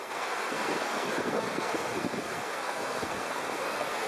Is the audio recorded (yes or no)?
no